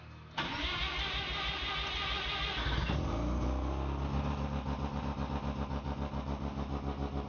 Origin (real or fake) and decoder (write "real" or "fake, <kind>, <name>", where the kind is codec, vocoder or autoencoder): real